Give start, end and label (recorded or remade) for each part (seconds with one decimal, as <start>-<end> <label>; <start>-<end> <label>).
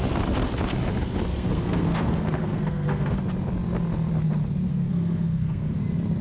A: 0.0-1.3 recorded; 1.3-3.2 remade; 3.2-4.7 recorded; 4.7-5.8 remade; 5.8-6.2 recorded